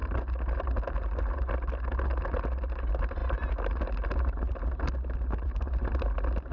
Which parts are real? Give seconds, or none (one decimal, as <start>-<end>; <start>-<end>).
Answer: 0.0-6.5